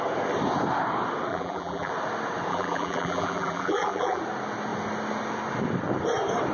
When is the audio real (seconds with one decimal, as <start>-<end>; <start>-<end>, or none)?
0.0-1.3; 1.9-2.5; 4.2-6.5